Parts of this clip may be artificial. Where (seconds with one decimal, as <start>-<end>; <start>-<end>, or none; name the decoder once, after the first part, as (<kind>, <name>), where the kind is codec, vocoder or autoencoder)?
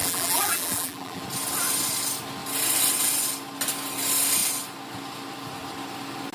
0.0-1.2 (vocoder, BigVGAN v2)